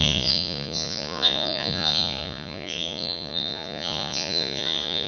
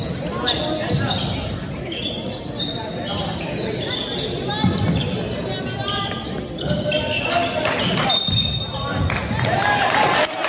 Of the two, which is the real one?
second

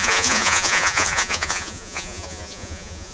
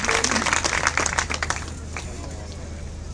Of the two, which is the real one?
second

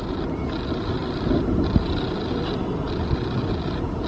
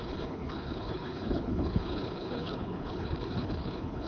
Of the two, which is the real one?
first